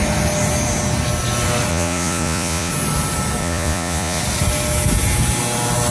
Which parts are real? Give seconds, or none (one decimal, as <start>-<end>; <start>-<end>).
0.0-1.7; 2.7-3.4; 4.2-5.9